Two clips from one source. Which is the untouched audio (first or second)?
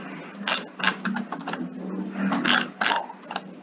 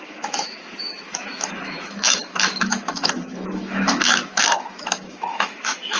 first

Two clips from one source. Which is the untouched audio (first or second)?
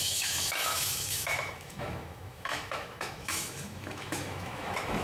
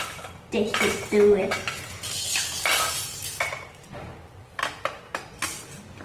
second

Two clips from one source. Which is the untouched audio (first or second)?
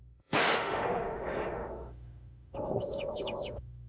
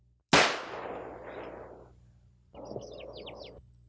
second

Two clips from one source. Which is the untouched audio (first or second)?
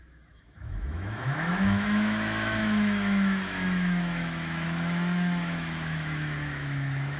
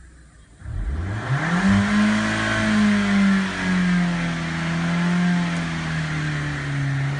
second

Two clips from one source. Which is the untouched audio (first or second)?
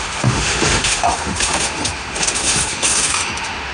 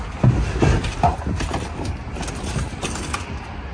second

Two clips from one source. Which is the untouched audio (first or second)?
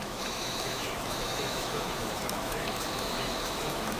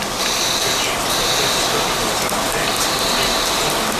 second